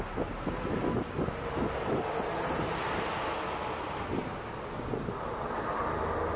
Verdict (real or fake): real